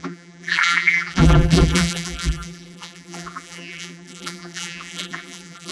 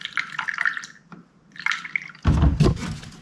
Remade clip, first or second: first